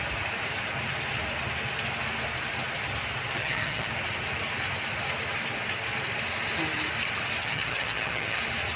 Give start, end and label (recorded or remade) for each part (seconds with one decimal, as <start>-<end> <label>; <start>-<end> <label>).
0.0-3.4 recorded; 3.4-3.9 remade; 3.9-7.4 recorded; 7.4-8.4 remade; 8.4-8.8 recorded